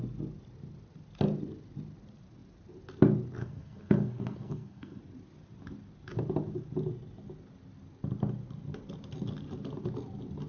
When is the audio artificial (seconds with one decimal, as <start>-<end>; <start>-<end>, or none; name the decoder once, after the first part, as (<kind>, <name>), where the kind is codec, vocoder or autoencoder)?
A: 3.4-5.0 (codec, SNAC)